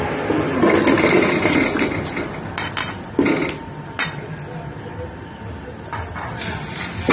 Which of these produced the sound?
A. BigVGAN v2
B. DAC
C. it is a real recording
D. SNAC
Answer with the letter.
C